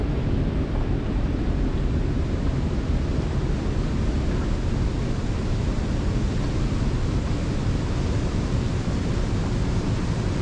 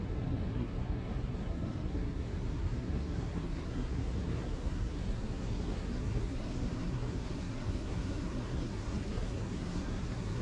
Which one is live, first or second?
first